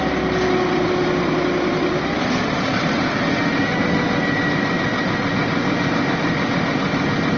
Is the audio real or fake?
real